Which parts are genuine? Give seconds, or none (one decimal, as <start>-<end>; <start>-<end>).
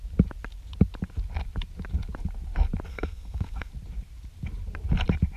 0.0-2.9; 3.7-5.4